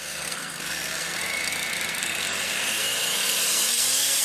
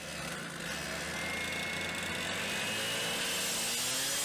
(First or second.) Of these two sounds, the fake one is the first